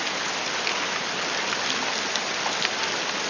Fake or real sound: real